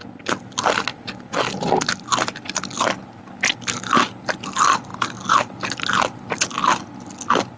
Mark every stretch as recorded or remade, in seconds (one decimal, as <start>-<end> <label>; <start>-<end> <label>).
0.0-7.6 recorded